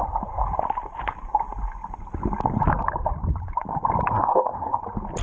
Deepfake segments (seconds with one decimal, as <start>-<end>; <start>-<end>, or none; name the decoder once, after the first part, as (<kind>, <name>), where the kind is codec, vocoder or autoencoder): 4.1-4.8 (codec, SNAC)